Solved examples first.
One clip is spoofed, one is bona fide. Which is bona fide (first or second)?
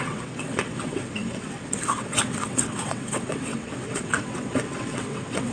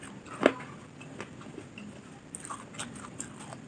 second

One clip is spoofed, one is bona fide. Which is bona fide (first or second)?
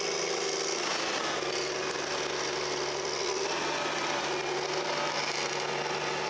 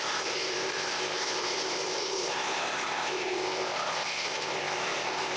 first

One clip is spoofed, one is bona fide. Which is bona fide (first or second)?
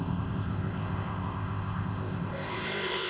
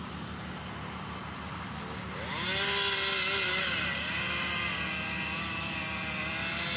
second